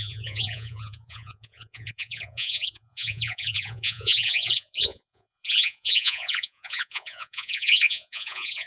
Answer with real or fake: fake